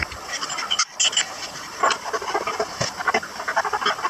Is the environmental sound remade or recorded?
recorded